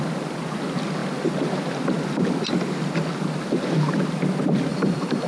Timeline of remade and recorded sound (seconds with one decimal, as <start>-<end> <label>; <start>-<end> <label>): 0.0-4.7 recorded; 4.7-5.3 remade